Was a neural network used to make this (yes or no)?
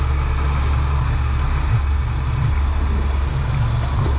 no